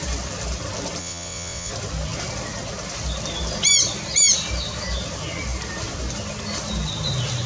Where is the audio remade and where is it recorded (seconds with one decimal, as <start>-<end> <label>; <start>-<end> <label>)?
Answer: 0.0-1.0 recorded; 1.0-1.7 remade; 1.7-7.5 recorded